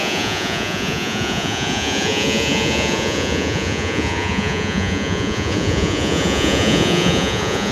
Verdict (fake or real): fake